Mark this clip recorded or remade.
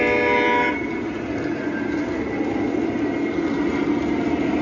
recorded